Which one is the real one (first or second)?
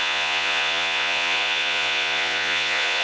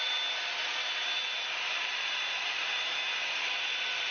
second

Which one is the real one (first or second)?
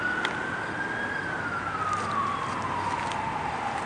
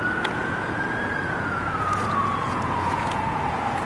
first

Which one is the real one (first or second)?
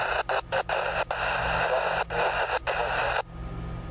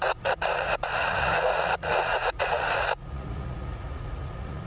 first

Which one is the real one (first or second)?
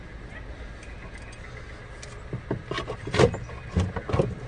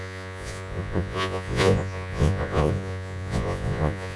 first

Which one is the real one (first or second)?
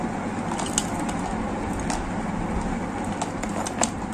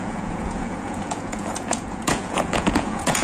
first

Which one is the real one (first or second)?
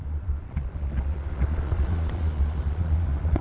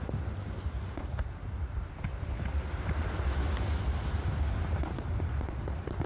second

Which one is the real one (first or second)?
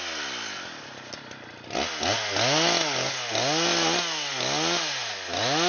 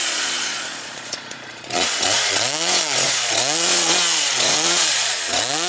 first